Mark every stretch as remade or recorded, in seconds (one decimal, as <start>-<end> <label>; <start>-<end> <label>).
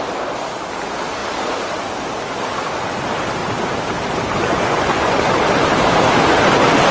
0.0-4.5 recorded; 4.5-5.3 remade; 5.3-6.9 recorded